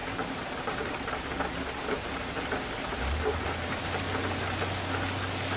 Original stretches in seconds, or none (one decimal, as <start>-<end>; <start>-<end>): 3.4-5.6